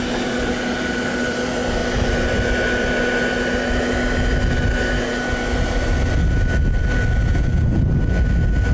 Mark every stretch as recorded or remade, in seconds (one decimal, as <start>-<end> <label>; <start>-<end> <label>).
0.0-7.3 recorded; 7.3-7.8 remade; 7.8-8.7 recorded